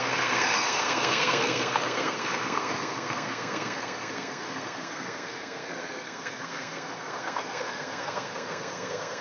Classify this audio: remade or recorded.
remade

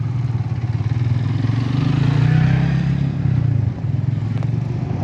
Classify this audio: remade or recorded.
recorded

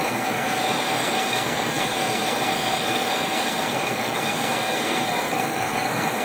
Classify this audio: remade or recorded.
remade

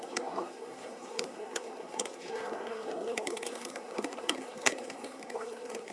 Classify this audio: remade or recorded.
remade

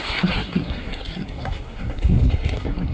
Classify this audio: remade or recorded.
remade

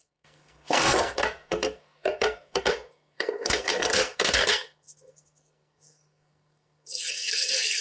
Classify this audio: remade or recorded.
remade